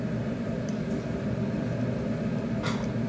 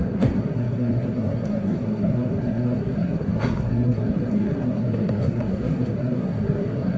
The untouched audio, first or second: first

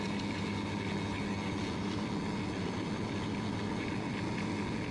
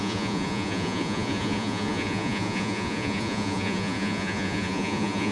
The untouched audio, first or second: first